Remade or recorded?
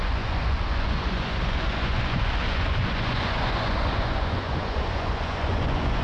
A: remade